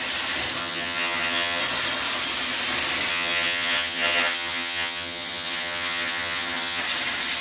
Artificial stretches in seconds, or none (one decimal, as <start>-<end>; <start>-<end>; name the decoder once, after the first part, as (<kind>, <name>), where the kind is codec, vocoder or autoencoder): 0.6-1.6 (vocoder, HiFi-GAN); 3.1-6.8

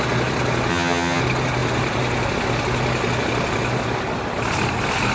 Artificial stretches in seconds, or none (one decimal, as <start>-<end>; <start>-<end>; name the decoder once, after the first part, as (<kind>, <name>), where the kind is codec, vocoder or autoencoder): 0.7-1.2 (vocoder, HiFi-GAN)

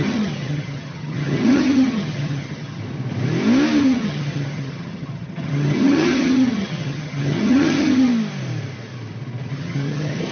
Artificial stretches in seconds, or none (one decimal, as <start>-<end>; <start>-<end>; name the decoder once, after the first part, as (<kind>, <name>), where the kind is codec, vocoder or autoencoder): 0.0-2.8 (vocoder, HiFi-GAN); 3.8-8.1; 9.5-10.3

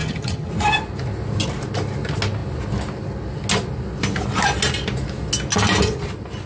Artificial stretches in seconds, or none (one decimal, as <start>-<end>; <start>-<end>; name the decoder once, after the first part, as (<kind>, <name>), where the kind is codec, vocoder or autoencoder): 0.0-0.5 (vocoder, HiFi-GAN)

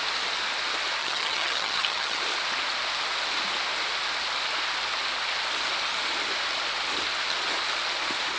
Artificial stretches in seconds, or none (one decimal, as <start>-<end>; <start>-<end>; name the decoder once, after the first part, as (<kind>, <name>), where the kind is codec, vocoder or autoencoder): 1.0-2.2 (vocoder, HiFi-GAN)

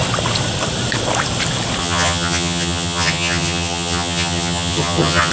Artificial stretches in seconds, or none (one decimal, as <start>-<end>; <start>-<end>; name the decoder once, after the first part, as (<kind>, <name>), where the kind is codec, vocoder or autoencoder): 1.8-5.3 (vocoder, HiFi-GAN)

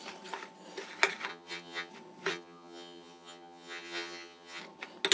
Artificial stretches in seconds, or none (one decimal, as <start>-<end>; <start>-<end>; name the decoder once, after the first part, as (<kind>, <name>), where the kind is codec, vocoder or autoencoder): 1.3-1.9 (vocoder, HiFi-GAN); 2.3-4.6

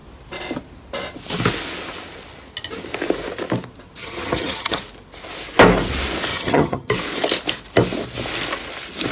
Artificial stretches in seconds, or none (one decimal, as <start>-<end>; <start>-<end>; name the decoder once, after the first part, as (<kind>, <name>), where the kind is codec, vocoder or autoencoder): 4.0-4.8 (vocoder, HiFi-GAN); 6.3-6.9